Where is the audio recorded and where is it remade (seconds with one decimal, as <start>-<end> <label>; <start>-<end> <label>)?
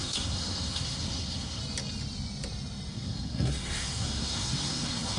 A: 0.0-1.6 remade; 1.6-2.9 recorded; 2.9-5.2 remade